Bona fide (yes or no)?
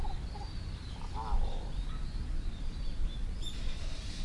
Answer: yes